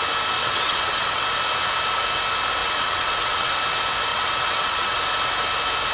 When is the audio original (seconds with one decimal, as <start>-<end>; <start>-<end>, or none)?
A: 0.0-0.4; 1.2-2.6; 3.5-4.1; 5.0-5.9